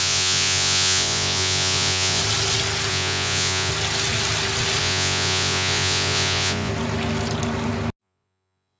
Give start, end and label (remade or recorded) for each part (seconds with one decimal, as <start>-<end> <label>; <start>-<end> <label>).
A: 0.0-2.2 remade; 2.2-2.9 recorded; 2.9-3.7 remade; 3.7-4.8 recorded; 4.8-6.7 remade; 6.7-8.0 recorded; 8.0-8.8 remade